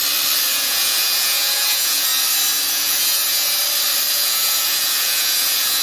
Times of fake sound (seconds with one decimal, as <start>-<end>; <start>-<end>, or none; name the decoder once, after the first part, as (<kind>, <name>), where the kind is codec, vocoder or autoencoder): 0.5-2.1 (vocoder, Vocos); 2.7-3.6; 4.1-5.8